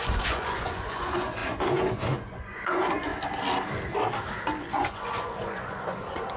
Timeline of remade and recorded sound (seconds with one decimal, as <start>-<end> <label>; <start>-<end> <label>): 0.0-3.1 remade; 3.1-4.6 recorded; 4.6-6.4 remade